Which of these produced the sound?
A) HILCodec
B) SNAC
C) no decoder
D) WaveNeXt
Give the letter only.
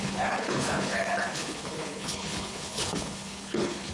A